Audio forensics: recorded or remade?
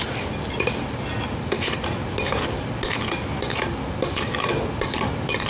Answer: recorded